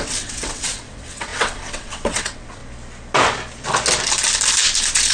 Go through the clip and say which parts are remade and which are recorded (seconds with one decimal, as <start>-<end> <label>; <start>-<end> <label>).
0.0-2.6 remade; 2.6-5.1 recorded